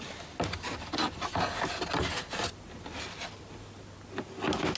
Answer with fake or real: real